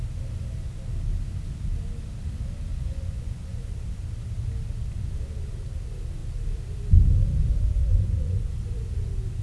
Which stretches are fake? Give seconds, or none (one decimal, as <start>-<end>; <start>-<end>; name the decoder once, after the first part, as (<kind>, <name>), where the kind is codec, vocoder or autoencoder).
2.7-3.7 (vocoder, Vocos); 7.8-8.5